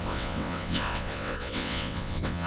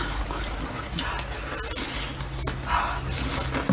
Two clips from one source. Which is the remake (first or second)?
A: first